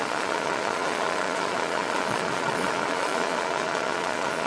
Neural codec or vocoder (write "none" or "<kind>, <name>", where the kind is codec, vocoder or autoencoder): vocoder, Vocos